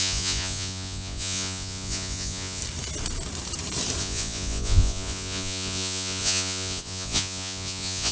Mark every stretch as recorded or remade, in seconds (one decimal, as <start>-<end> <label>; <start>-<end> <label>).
0.0-2.6 remade; 2.6-4.0 recorded; 4.0-8.1 remade

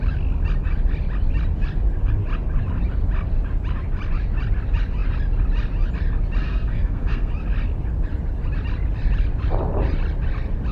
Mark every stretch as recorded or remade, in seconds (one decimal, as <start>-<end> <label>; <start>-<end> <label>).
0.0-6.4 recorded; 6.4-7.3 remade; 7.3-10.7 recorded

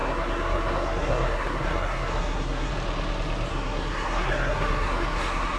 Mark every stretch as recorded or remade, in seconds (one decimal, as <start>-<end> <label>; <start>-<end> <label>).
0.0-2.7 remade; 2.7-3.5 recorded; 3.5-5.6 remade